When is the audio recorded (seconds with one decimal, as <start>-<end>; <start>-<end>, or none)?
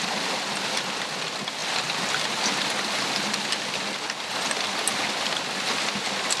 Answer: 0.0-6.4